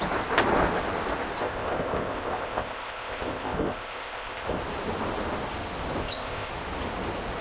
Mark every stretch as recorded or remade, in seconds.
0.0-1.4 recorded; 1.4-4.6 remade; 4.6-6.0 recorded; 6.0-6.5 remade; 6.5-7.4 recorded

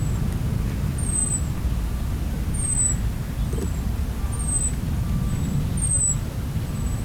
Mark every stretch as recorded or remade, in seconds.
0.0-7.0 recorded

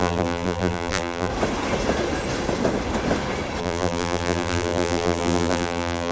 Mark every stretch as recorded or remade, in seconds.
0.0-1.3 remade; 1.3-3.6 recorded; 3.6-6.1 remade

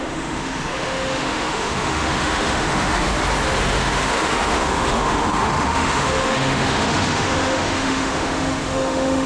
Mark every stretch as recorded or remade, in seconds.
0.0-3.1 remade; 3.1-3.6 recorded; 3.6-9.3 remade

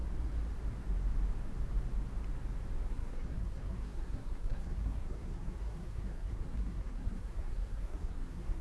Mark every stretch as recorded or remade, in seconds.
0.0-2.9 recorded; 2.9-8.6 remade

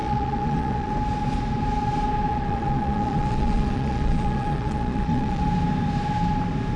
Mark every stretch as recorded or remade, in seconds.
0.0-0.9 remade; 0.9-2.3 recorded; 2.3-5.4 remade; 5.4-6.8 recorded